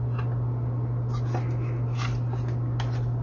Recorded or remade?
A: recorded